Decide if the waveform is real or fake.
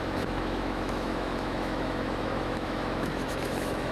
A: fake